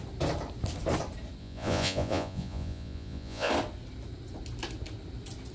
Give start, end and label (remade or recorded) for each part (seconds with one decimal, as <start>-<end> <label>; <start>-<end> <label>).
0.0-1.4 recorded; 1.4-3.5 remade; 3.5-5.5 recorded